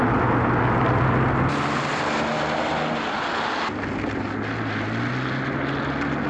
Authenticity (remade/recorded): recorded